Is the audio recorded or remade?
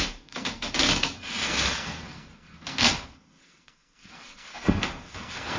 remade